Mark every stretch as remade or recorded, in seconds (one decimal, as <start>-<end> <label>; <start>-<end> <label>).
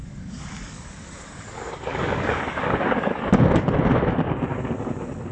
0.0-3.2 remade; 3.2-5.3 recorded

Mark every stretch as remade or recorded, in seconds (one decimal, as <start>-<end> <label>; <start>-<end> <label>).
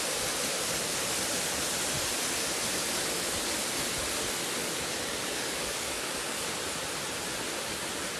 0.0-4.6 recorded; 4.6-6.5 remade; 6.5-8.2 recorded